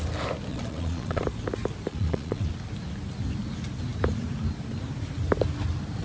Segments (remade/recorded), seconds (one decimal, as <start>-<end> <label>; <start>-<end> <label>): 0.0-0.5 recorded; 0.5-1.2 remade; 1.2-1.9 recorded; 1.9-2.5 remade; 2.5-6.0 recorded